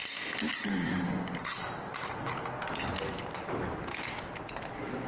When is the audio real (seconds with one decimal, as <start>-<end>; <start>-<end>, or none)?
0.0-5.1